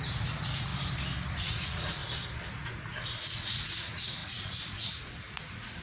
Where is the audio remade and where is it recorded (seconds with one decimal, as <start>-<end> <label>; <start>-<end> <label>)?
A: 0.0-0.7 remade; 0.7-1.4 recorded; 1.4-2.0 remade; 2.0-3.2 recorded; 3.2-5.8 remade